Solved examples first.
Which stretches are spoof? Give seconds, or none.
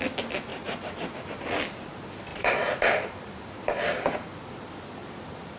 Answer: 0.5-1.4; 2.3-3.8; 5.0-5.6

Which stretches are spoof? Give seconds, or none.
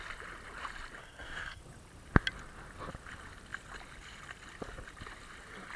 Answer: 1.0-1.6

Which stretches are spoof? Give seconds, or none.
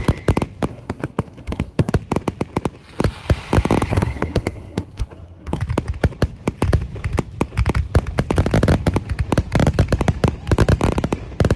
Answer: 0.7-1.9; 3.9-5.6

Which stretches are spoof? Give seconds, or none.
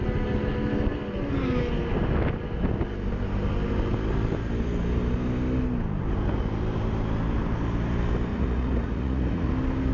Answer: 8.3-9.5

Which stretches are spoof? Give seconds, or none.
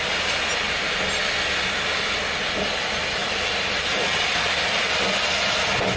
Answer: 3.2-5.0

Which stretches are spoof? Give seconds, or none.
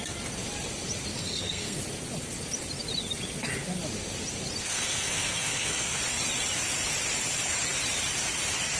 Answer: 1.1-1.8; 4.6-6.0